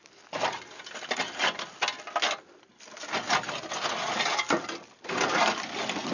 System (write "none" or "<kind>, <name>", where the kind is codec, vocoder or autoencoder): none